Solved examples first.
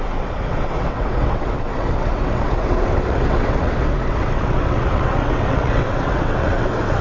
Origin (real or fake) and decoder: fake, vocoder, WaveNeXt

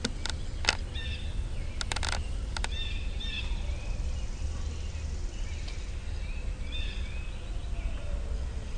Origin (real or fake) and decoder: real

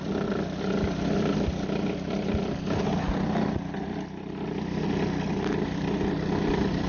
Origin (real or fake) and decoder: real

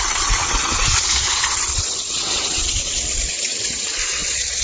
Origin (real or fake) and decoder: fake, vocoder, WaveNeXt